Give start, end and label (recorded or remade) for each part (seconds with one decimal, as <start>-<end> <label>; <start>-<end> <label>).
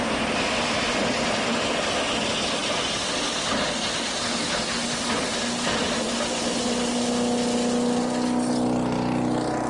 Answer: 0.0-9.7 recorded